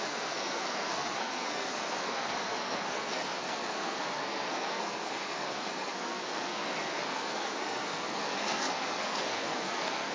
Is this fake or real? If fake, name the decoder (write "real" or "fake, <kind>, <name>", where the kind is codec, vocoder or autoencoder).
fake, codec, SNAC